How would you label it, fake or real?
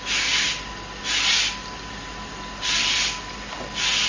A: real